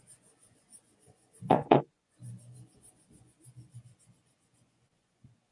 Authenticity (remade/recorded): remade